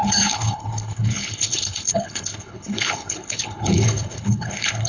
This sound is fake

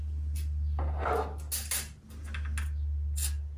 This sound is real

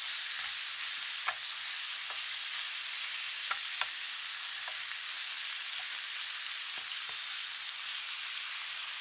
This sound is real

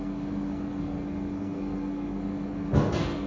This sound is fake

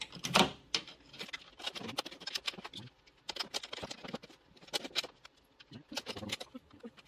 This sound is real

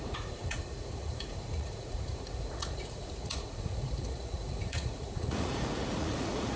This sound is fake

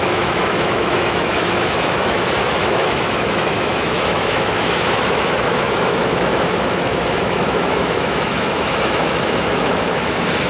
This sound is fake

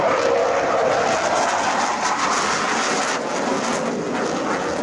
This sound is real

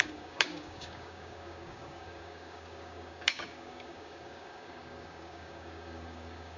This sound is fake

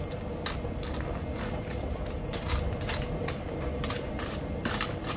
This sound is real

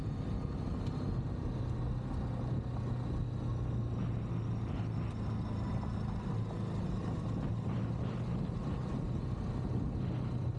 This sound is real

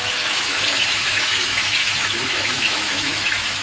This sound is fake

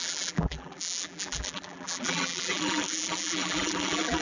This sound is fake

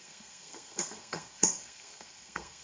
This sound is fake